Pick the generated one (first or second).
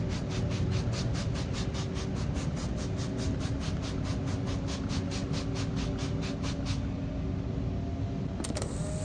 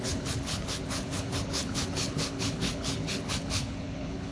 second